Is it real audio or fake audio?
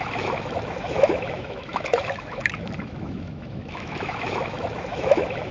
fake